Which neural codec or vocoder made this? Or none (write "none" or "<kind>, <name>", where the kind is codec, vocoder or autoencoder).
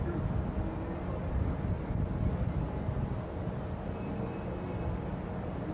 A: none